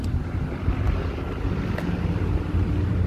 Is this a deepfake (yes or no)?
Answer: no